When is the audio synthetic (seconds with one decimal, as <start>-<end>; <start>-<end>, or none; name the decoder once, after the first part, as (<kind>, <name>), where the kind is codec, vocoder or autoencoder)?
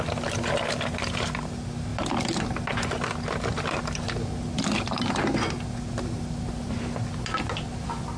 none